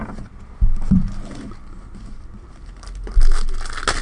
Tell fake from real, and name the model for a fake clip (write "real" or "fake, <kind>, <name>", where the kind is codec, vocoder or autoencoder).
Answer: real